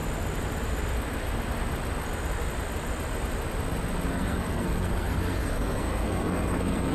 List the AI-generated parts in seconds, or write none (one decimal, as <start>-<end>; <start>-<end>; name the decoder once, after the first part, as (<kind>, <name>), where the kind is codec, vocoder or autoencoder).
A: 4.1-6.9 (codec, SNAC)

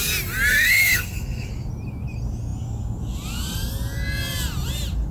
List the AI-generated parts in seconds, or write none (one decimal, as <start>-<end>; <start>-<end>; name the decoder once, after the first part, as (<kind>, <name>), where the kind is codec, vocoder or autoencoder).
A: 0.5-1.5 (codec, SNAC)

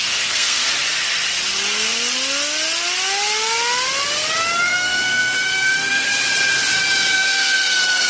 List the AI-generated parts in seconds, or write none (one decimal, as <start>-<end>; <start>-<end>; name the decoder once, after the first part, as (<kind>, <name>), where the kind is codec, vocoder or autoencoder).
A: 0.0-0.6 (codec, SNAC); 4.6-6.1; 7.1-8.1